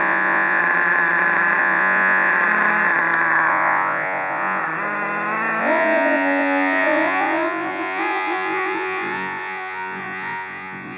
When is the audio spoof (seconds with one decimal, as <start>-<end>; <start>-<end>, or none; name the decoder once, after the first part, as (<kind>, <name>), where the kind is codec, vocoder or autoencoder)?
0.0-0.6 (vocoder, Vocos); 1.6-2.3; 3.5-4.6; 5.6-11.0

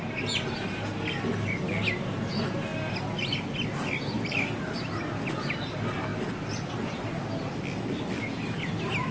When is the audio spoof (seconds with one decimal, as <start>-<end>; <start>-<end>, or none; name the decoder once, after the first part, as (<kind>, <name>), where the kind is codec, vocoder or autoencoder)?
none

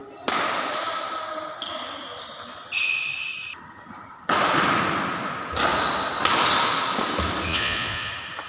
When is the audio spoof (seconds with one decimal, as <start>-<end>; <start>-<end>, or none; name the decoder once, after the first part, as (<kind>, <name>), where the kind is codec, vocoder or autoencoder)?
7.5-8.1 (vocoder, Vocos)

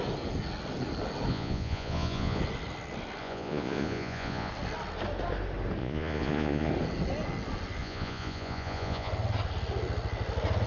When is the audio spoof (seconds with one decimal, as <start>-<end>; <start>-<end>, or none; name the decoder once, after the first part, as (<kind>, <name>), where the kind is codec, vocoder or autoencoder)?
1.3-2.4 (vocoder, Vocos); 3.2-4.5; 5.8-6.7; 7.8-9.1

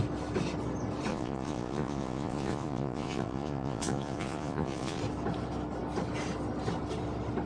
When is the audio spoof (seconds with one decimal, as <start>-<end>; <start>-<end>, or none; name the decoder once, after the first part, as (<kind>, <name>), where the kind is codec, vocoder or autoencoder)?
1.1-5.0 (vocoder, Vocos)